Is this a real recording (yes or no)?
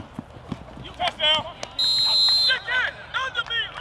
yes